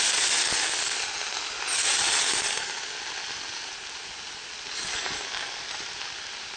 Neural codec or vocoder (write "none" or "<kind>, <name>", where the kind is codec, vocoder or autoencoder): none